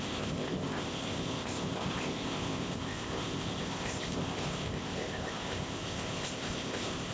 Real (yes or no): no